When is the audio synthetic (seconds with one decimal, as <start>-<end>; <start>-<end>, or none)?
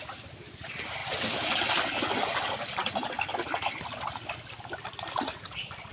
none